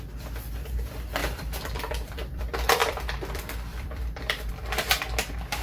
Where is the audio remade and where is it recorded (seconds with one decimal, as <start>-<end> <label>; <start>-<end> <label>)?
0.0-1.2 recorded; 1.2-2.4 remade; 2.4-2.8 recorded; 2.8-4.5 remade; 4.5-5.6 recorded